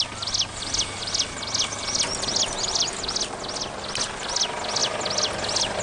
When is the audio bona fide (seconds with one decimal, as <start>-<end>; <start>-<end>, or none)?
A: 0.0-5.8